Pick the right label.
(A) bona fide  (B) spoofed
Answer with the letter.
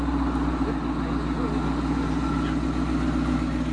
A